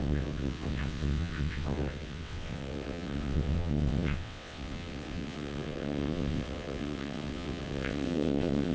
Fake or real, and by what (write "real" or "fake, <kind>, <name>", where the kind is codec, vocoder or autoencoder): fake, vocoder, WaveNeXt